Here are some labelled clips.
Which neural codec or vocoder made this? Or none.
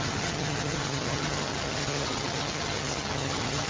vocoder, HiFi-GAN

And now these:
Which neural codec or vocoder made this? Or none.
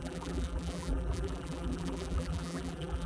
vocoder, BigVGAN v2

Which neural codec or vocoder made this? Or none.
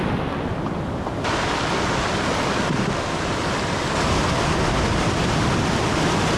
none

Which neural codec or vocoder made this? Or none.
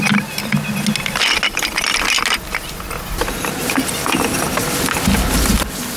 none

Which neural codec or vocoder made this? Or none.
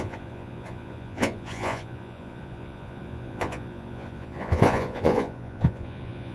vocoder, Vocos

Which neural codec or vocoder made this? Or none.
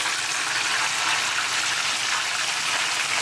none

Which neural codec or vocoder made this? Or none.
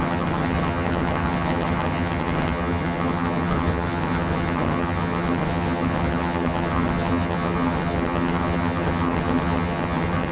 vocoder, HiFi-GAN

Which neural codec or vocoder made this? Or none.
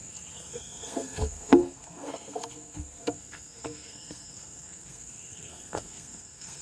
codec, SNAC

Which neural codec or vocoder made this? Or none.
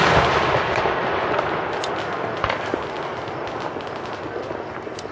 none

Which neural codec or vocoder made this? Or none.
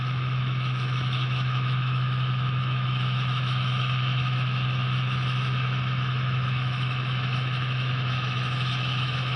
autoencoder, DAC-VAE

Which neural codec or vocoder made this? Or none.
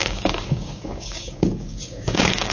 codec, DAC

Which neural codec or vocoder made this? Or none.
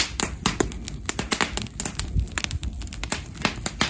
none